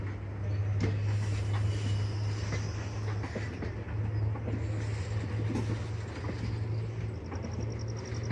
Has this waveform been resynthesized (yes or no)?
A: no